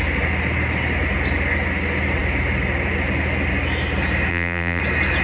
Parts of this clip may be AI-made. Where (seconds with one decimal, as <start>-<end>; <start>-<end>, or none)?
4.3-4.8